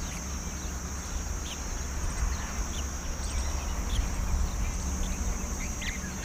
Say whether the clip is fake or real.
real